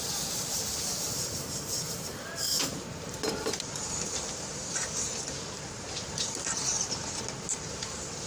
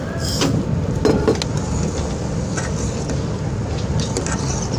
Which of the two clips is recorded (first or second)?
second